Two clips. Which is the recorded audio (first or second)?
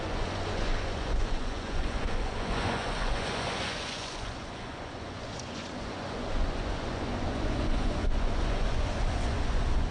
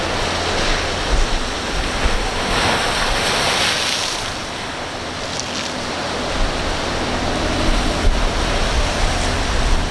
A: second